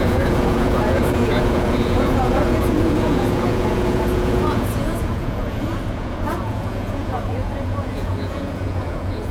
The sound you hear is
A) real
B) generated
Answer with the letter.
B